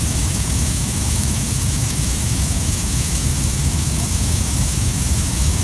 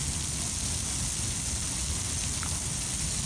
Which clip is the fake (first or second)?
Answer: first